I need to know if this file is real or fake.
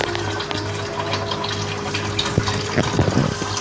real